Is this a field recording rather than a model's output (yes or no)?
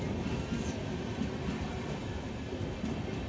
yes